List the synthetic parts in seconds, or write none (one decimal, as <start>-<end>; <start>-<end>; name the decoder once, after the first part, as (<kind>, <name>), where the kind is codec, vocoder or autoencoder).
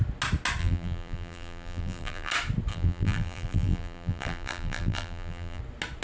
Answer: 0.6-2.3 (vocoder, BigVGAN v2); 2.7-5.6